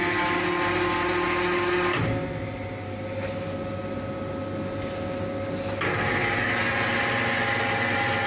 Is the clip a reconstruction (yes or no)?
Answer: no